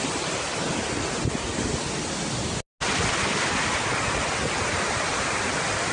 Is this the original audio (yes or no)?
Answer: yes